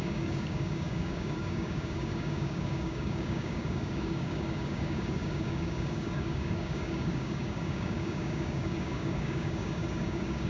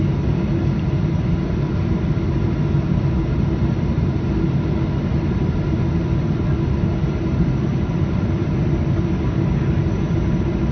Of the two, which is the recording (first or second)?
second